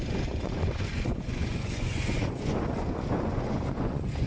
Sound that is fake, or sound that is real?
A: fake